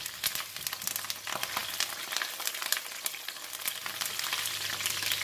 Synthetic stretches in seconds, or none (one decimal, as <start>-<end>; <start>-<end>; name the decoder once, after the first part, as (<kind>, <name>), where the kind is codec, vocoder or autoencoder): 3.8-4.7 (vocoder, BigVGAN v2)